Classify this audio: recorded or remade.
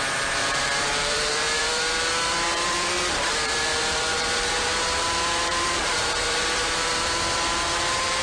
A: remade